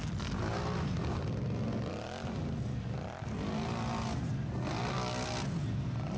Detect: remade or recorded recorded